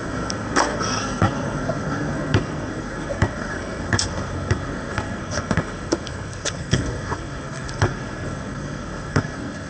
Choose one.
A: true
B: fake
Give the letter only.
B